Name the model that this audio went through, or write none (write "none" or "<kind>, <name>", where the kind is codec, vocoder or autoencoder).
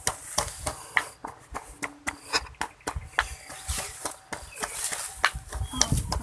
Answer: none